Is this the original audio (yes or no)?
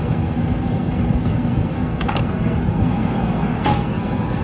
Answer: no